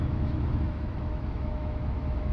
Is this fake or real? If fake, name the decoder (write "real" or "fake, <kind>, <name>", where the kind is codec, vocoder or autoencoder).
fake, autoencoder, DAC-VAE